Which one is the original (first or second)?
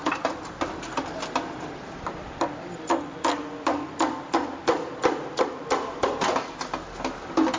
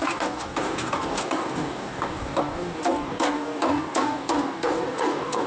first